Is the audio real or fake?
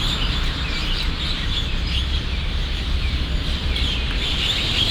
fake